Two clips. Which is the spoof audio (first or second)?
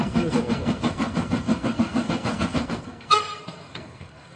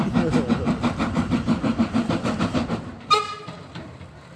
first